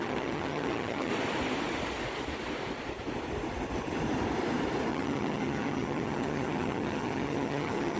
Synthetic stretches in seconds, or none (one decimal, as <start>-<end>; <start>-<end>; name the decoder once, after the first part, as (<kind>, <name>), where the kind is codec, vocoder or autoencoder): 0.0-1.1 (vocoder, HiFi-GAN); 4.9-8.0

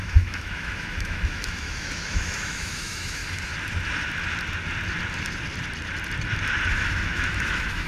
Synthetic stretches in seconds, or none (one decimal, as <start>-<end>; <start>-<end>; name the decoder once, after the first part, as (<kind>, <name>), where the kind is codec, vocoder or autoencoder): 0.0-3.2 (autoencoder, DAC-VAE); 6.7-7.9